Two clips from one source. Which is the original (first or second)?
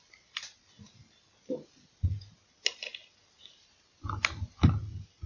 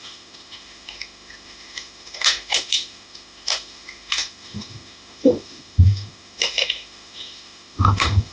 first